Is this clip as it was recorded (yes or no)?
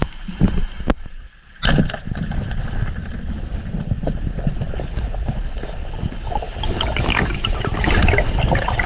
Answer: yes